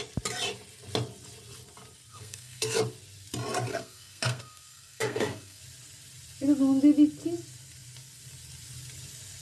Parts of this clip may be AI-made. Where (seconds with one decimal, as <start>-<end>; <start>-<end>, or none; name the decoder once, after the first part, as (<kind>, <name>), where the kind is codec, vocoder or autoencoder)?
2.1-2.8 (codec, SNAC); 3.7-5.6